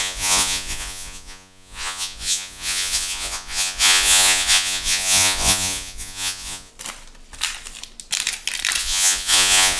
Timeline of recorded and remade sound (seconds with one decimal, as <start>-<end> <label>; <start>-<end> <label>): 0.0-6.7 remade; 6.7-8.8 recorded; 8.8-9.8 remade